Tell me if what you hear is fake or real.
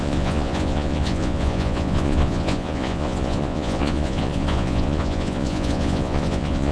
fake